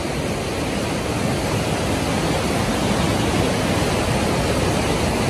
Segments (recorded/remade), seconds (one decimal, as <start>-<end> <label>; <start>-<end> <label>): 0.0-5.3 recorded